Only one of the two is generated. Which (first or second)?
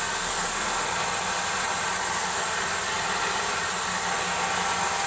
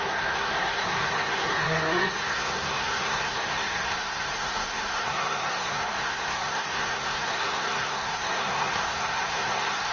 second